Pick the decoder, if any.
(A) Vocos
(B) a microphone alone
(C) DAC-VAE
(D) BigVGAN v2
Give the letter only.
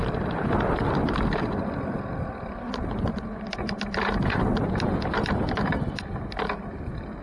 D